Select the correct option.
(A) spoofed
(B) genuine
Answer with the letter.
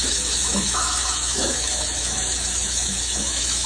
A